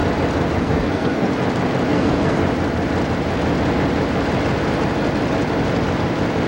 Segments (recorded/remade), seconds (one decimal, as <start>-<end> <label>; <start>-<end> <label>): 0.0-0.6 recorded; 0.6-1.3 remade; 1.3-1.9 recorded; 1.9-2.4 remade; 2.4-6.5 recorded